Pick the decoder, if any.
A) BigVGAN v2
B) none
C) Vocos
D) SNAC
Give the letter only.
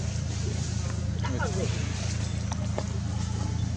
B